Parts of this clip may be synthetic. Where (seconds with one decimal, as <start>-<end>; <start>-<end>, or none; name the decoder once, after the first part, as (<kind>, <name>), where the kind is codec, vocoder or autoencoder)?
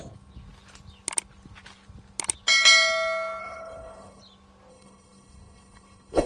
3.4-4.2 (codec, HILCodec); 4.7-6.3